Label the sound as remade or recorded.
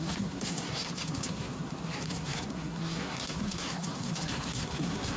remade